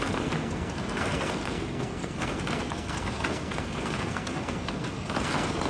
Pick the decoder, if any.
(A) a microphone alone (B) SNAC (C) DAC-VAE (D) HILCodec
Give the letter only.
B